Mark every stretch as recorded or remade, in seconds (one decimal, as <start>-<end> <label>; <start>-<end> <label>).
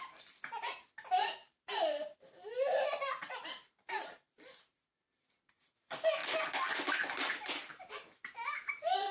0.0-1.4 recorded; 1.4-5.5 remade; 5.5-7.6 recorded; 7.6-9.1 remade